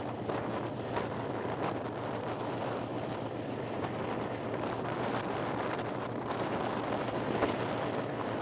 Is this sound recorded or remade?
recorded